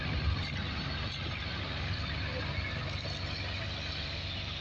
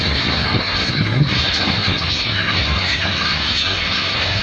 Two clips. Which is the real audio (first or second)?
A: first